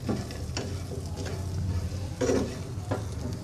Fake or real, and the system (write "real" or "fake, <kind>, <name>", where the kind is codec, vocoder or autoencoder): real